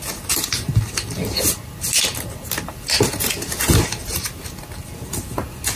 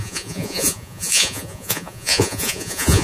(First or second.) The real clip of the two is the first